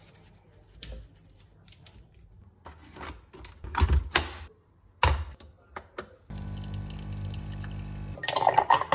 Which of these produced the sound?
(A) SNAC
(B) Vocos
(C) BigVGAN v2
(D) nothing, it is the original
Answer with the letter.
D